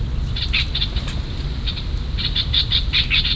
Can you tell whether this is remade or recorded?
recorded